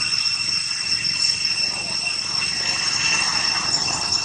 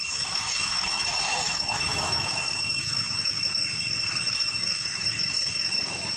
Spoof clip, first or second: second